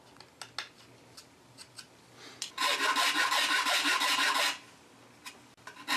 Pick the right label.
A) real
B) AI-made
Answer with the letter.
A